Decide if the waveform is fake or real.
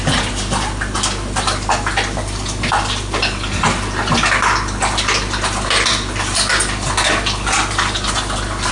real